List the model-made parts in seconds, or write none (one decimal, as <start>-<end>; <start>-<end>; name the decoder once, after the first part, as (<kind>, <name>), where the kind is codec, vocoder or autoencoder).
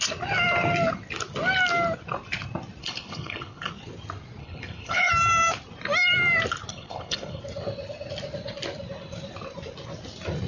2.8-3.7 (codec, HILCodec); 4.4-5.1; 6.7-7.4